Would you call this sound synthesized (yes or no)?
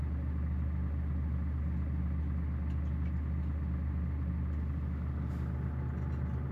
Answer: no